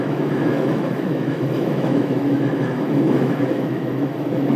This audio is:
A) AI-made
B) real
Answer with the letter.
A